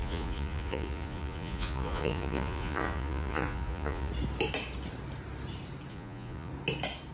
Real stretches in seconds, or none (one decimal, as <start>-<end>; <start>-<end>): 4.1-5.9; 6.5-7.1